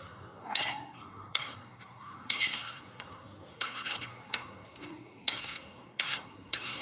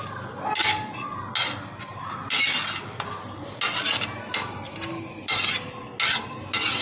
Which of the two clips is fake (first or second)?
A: first